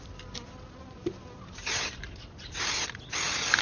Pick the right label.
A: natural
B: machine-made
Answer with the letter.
A